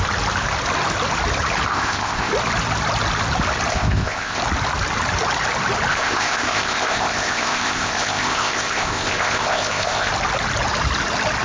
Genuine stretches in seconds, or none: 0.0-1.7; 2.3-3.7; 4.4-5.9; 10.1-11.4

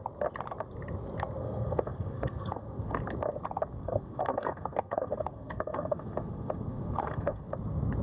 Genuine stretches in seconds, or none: 0.0-1.4; 3.0-3.8; 7.5-8.0

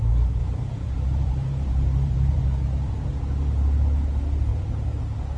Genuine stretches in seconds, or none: 0.0-0.4; 2.4-4.5; 5.0-5.4

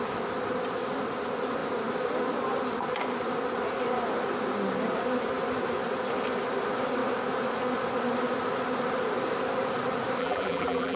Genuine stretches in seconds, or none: 0.0-10.2

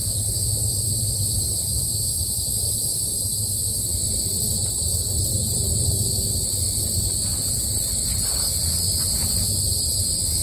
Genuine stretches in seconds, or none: 0.0-10.4

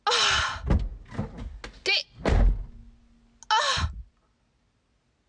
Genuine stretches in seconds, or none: 0.0-5.3